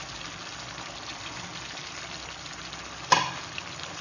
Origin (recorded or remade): recorded